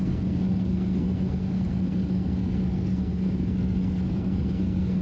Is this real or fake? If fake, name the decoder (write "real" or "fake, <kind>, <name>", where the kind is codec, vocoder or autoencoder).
fake, codec, SNAC